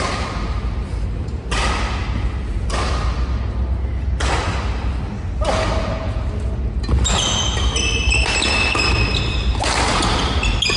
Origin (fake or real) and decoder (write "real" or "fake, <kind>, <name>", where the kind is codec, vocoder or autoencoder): real